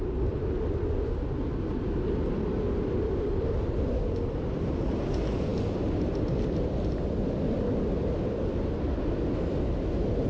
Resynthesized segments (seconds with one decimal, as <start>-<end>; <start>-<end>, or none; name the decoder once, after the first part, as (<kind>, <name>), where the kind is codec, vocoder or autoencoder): none